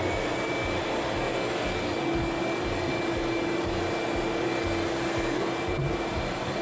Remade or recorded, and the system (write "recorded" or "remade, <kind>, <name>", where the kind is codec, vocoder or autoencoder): recorded